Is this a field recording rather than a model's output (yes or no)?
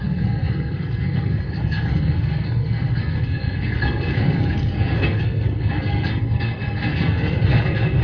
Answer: no